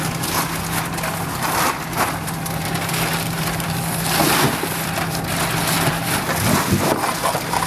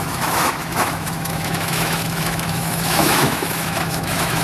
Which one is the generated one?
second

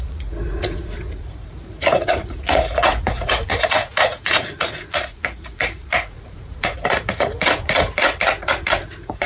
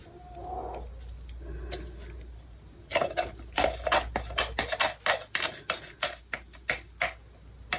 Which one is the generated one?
first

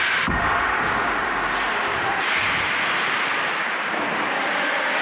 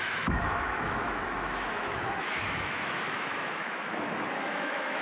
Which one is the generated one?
second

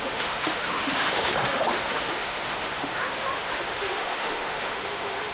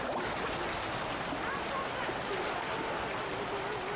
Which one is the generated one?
first